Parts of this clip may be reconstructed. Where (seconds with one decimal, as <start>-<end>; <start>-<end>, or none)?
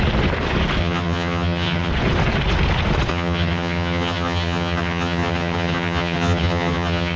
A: 0.8-1.9; 3.1-7.2